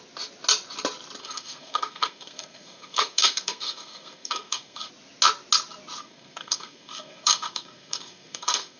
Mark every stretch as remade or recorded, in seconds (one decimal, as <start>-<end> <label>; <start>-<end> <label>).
0.0-1.2 recorded; 1.2-4.9 remade; 4.9-6.0 recorded; 6.0-8.8 remade